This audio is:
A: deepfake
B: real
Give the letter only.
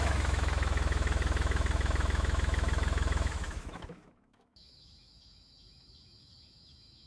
A